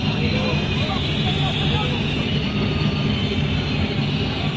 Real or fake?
real